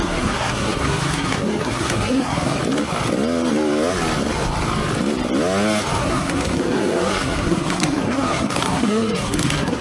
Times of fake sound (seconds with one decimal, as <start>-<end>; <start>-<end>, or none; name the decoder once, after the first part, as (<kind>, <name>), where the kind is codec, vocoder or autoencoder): 0.0-2.6 (codec, SNAC); 6.0-9.8